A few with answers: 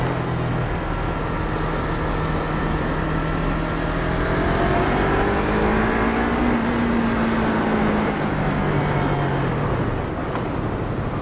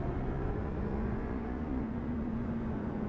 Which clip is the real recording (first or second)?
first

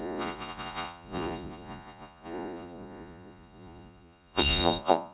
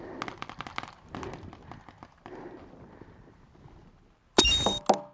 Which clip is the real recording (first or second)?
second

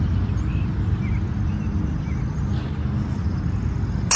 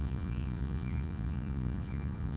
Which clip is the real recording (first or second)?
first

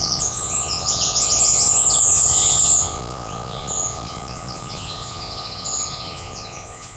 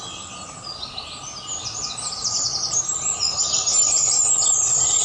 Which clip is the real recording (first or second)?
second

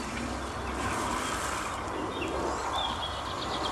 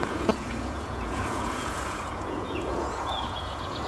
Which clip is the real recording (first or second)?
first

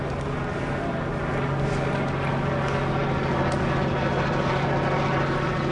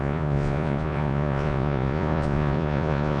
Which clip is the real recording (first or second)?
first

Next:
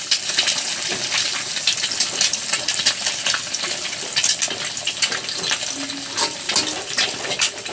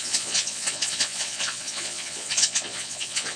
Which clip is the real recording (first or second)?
first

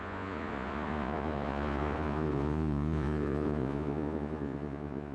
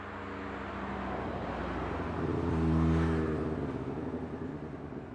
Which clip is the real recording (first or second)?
second